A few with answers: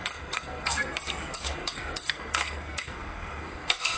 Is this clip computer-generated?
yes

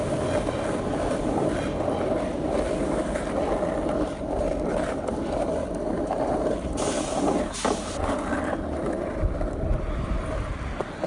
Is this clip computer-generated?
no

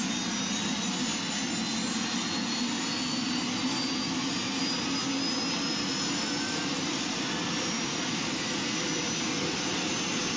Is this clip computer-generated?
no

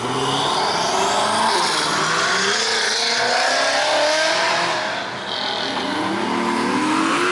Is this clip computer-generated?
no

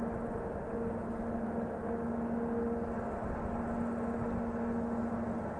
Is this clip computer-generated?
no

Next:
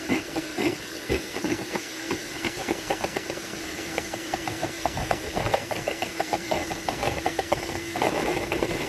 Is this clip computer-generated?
yes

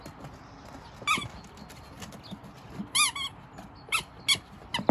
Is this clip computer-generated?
no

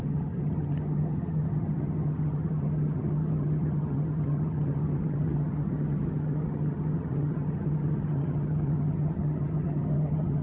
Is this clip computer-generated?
yes